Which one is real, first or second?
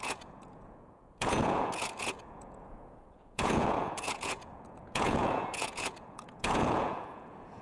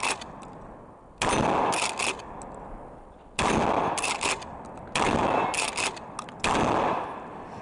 second